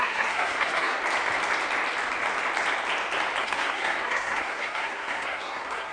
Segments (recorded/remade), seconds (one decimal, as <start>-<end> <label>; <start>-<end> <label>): 0.0-1.0 remade; 1.0-3.4 recorded; 3.4-5.9 remade